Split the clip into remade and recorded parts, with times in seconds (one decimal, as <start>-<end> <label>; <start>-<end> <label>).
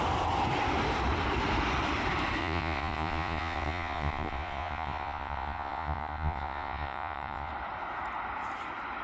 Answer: 0.0-2.4 recorded; 2.4-7.5 remade; 7.5-9.0 recorded